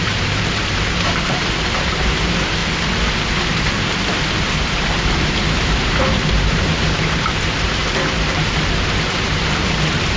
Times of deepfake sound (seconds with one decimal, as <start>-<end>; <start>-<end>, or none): 0.0-2.6; 4.6-10.2